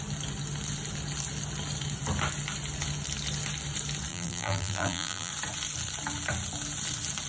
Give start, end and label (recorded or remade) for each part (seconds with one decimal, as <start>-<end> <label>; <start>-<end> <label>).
0.0-4.1 recorded; 4.1-5.3 remade; 5.3-7.3 recorded